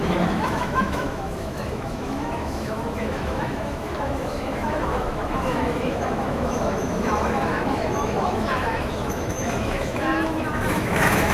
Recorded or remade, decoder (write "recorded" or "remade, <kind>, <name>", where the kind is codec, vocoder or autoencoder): remade, autoencoder, DAC-VAE